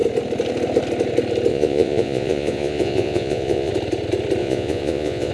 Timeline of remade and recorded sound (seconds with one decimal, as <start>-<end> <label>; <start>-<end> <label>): 0.0-1.5 recorded; 1.5-3.7 remade; 3.7-4.4 recorded; 4.4-5.3 remade